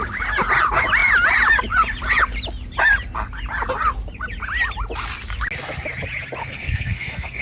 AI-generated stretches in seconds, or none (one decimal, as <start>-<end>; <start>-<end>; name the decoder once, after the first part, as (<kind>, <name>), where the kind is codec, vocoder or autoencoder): 6.4-7.4 (codec, SNAC)